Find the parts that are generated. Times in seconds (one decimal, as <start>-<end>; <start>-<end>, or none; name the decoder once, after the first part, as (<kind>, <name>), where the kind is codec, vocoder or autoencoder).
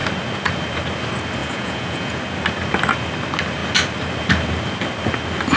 1.4-2.2 (vocoder, Vocos)